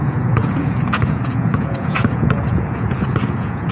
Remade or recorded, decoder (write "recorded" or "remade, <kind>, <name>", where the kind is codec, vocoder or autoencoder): remade, vocoder, Vocos